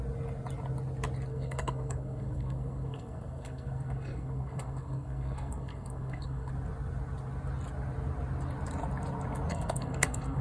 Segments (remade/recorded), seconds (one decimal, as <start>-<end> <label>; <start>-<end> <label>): 0.0-1.3 recorded; 1.3-6.5 remade; 6.5-9.5 recorded; 9.5-10.4 remade